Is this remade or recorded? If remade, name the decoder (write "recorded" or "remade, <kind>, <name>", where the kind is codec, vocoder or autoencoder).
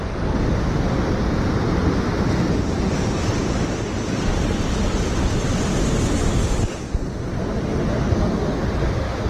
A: recorded